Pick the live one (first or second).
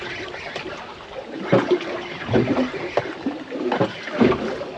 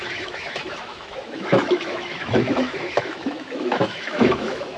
first